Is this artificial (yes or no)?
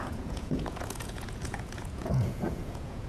yes